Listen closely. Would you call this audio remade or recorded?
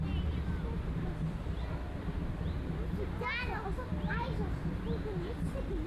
recorded